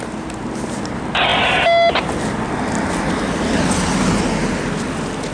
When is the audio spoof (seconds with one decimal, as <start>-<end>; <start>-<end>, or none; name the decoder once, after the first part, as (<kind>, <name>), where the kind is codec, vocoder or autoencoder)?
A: none